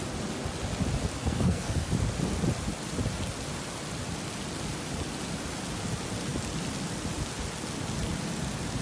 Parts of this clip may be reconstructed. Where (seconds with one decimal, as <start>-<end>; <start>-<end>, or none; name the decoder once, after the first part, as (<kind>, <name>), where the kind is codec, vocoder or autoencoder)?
1.2-1.9 (codec, SNAC)